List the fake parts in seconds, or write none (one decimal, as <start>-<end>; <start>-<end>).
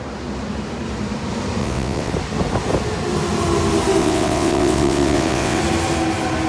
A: 1.6-2.1; 4.0-5.6